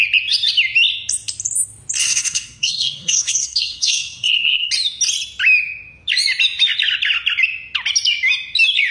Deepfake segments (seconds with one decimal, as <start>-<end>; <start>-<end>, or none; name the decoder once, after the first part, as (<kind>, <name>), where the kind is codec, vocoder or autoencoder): 2.0-4.7 (codec, SNAC)